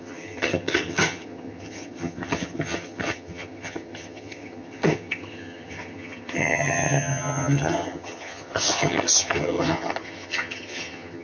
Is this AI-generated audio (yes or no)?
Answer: yes